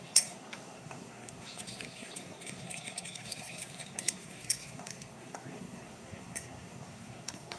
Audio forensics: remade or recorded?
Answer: remade